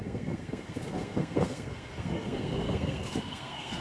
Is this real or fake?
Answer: fake